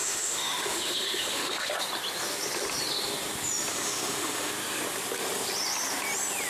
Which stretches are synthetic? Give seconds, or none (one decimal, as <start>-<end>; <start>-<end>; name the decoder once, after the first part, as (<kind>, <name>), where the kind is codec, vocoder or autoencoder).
0.0-1.7 (autoencoder, DAC-VAE); 3.7-4.5